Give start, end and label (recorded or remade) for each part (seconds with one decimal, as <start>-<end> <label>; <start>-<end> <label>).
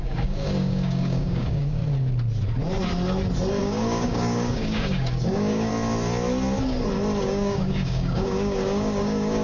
0.0-1.8 remade; 1.8-3.6 recorded; 3.6-5.7 remade; 5.7-7.2 recorded; 7.2-9.4 remade